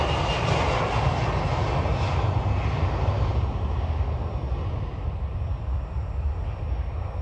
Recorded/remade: recorded